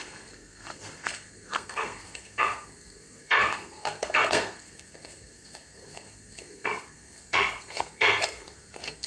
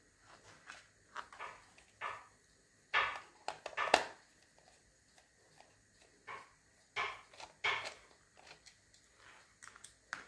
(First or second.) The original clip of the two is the second